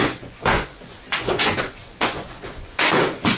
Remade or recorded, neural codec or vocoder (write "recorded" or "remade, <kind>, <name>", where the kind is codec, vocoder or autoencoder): remade, vocoder, Vocos